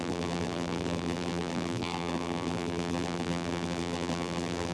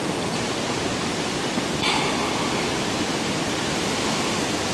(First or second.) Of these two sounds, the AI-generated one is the first